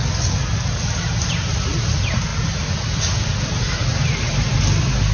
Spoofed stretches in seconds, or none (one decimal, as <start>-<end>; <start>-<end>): none